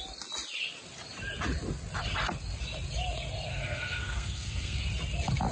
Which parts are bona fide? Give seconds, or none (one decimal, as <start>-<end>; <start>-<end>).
0.0-3.5; 4.8-5.5